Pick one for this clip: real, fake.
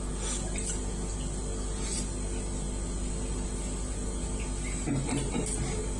real